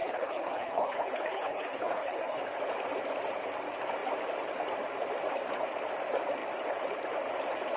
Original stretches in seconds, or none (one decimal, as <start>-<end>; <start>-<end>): 2.4-7.8